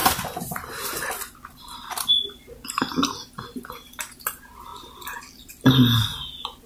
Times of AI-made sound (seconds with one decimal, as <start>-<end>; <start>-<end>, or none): 4.7-5.5